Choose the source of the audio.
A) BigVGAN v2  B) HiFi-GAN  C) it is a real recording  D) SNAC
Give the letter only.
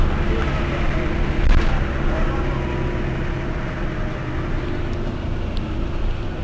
C